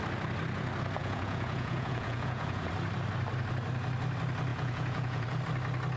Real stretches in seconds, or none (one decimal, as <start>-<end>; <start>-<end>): 0.0-1.0; 2.7-4.5; 5.4-6.0